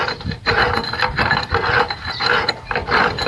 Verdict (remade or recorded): recorded